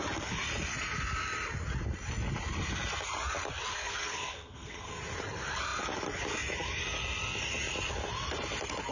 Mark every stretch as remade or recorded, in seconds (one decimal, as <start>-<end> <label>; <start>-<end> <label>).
0.0-3.7 recorded; 3.7-4.9 remade; 4.9-8.9 recorded